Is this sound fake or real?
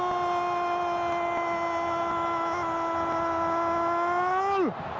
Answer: real